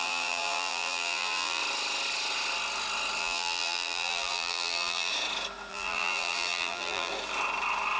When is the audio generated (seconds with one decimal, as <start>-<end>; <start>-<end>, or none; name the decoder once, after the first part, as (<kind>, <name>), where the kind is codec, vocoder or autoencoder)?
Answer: 0.0-1.6 (vocoder, BigVGAN v2); 3.2-5.1; 5.7-7.1

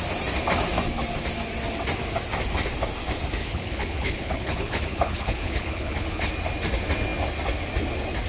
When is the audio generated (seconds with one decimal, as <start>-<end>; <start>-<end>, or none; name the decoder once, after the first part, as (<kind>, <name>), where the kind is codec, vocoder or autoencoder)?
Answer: 3.4-6.3 (codec, HILCodec)

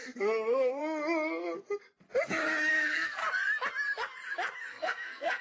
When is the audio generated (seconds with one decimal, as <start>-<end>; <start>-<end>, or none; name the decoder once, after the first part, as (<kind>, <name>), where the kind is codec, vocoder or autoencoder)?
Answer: 0.0-0.8 (codec, SNAC); 2.7-3.2; 4.7-5.4

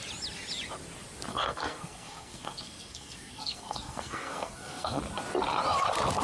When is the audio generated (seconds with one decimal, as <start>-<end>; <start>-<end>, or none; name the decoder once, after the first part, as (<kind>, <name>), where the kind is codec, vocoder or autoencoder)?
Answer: 1.3-5.0 (codec, SNAC)